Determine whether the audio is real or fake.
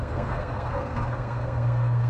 fake